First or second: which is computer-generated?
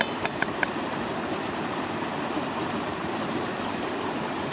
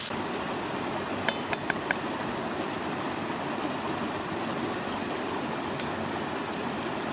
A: first